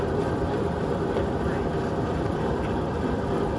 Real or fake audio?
fake